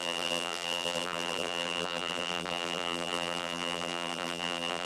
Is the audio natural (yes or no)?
no